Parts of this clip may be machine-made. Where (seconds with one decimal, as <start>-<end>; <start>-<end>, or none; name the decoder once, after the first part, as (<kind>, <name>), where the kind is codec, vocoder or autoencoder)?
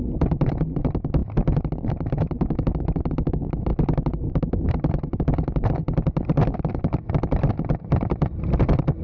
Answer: none